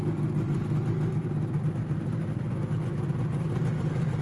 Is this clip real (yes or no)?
no